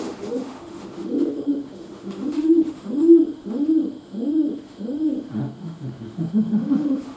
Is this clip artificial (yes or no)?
yes